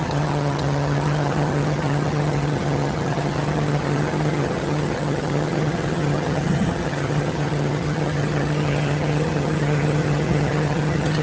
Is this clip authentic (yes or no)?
no